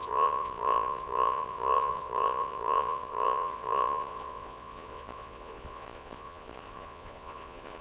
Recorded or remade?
remade